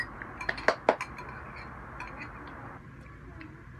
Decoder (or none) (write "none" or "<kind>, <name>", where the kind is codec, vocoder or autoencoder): none